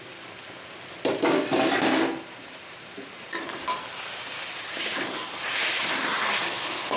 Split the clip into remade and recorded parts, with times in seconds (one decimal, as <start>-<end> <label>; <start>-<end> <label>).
0.0-1.9 recorded; 1.9-5.9 remade; 5.9-7.0 recorded